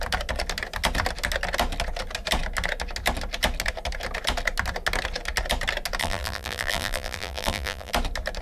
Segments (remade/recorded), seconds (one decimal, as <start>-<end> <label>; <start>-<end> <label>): 0.0-6.0 recorded; 6.0-7.9 remade; 7.9-8.4 recorded

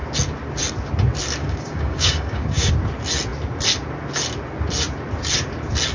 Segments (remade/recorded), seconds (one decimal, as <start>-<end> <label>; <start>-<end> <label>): 0.0-1.4 recorded; 1.4-2.7 remade; 2.7-5.9 recorded

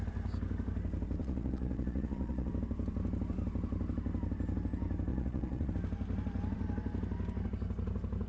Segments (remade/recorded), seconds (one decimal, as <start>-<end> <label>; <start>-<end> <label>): 0.0-1.2 recorded; 1.2-2.5 remade; 2.5-5.1 recorded; 5.1-5.7 remade; 5.7-8.3 recorded

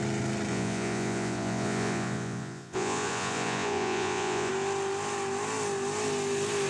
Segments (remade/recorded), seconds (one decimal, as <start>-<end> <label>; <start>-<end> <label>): 0.0-0.5 recorded; 0.5-4.5 remade; 4.5-6.7 recorded

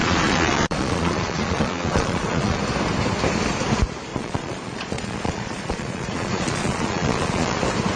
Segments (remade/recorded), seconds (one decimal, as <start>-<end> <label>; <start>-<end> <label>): 0.0-2.6 remade; 2.6-4.1 recorded; 4.1-7.6 remade; 7.6-8.0 recorded